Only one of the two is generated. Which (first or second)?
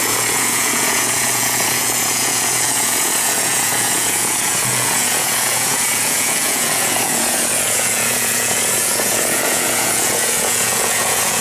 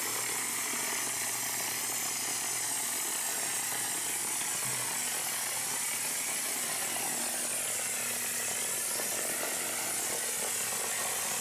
first